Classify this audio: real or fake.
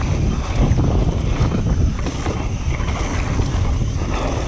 real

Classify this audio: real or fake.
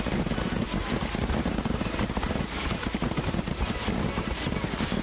real